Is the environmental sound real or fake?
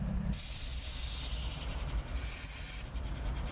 real